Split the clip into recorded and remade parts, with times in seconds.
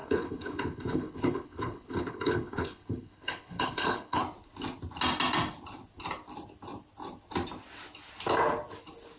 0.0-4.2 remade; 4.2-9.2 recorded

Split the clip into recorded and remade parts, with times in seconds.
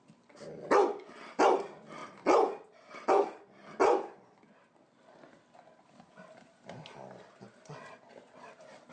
0.0-8.9 recorded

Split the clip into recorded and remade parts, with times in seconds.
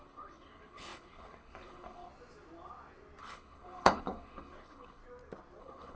0.0-2.1 remade; 2.1-3.2 recorded; 3.2-5.0 remade; 5.0-5.6 recorded; 5.6-6.0 remade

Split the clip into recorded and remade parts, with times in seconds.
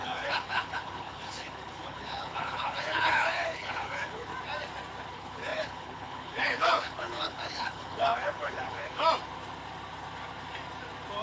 0.0-4.3 remade; 4.3-5.1 recorded; 5.1-9.0 remade; 9.0-11.2 recorded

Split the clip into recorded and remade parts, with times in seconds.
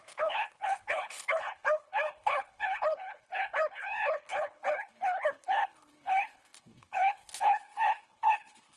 0.0-8.8 remade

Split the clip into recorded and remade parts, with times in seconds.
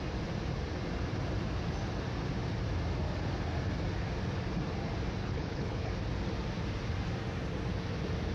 0.0-5.2 recorded; 5.2-5.9 remade; 5.9-8.3 recorded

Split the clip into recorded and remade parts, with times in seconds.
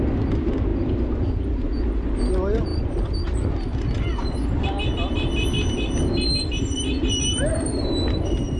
0.0-8.6 recorded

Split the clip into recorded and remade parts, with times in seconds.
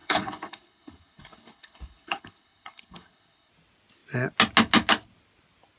0.0-3.5 remade; 3.5-5.8 recorded